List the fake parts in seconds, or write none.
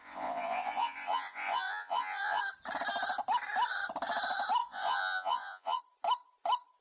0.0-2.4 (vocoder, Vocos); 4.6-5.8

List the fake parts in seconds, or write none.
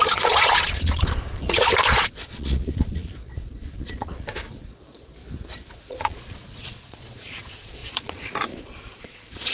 0.0-5.2 (vocoder, Vocos); 5.7-9.5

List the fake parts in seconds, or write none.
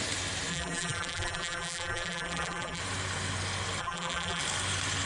0.5-2.8 (vocoder, BigVGAN v2); 3.8-4.4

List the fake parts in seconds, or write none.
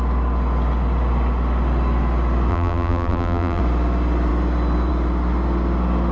2.5-3.6 (vocoder, BigVGAN v2)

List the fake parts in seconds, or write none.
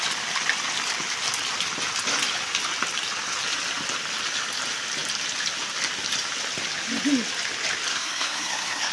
7.9-8.9 (codec, SNAC)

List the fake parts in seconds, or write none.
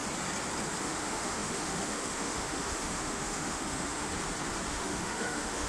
0.8-4.1 (autoencoder, DAC-VAE); 4.7-5.7